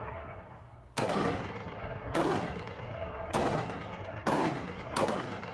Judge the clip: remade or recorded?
remade